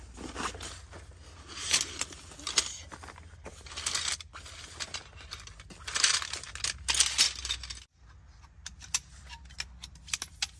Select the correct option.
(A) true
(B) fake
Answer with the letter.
A